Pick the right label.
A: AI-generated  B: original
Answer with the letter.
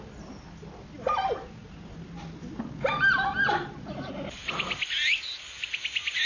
B